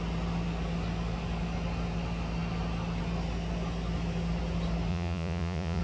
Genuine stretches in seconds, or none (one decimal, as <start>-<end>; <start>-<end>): 0.0-4.9